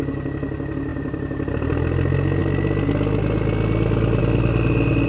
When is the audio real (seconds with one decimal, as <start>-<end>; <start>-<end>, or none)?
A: 0.0-0.9; 1.5-5.1